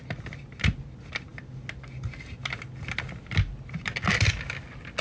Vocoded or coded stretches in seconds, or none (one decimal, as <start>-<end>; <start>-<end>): none